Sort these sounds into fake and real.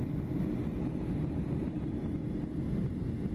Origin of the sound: real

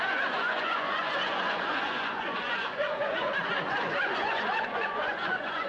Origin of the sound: fake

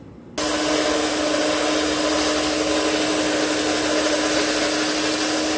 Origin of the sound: real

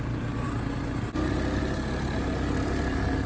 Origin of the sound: real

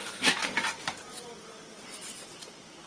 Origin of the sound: real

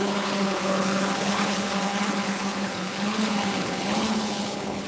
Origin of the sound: fake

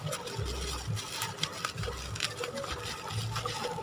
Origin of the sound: real